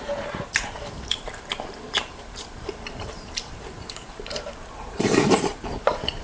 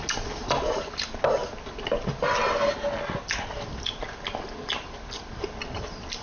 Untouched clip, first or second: second